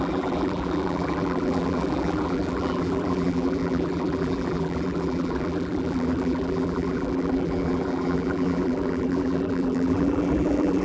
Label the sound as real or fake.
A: fake